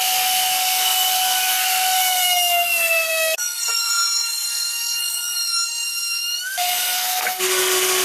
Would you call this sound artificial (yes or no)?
yes